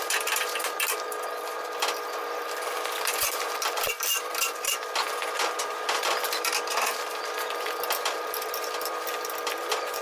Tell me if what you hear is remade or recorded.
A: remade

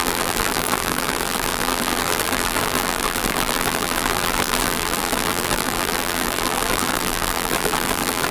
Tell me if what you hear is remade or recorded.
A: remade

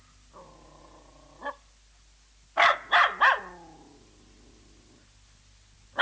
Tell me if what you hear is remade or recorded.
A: recorded